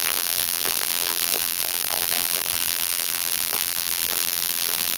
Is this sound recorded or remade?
remade